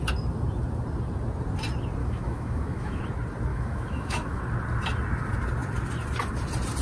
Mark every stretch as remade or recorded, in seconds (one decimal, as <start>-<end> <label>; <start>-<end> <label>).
0.0-2.0 recorded; 2.0-3.0 remade; 3.0-3.5 recorded; 3.5-4.4 remade; 4.4-6.8 recorded